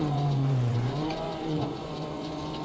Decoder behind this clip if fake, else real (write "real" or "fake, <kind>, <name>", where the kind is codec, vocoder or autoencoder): fake, vocoder, Vocos